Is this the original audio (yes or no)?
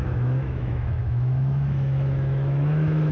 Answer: no